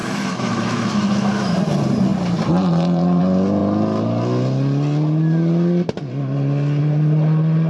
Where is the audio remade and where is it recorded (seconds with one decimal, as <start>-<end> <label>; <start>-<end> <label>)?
0.0-1.6 remade; 1.6-7.7 recorded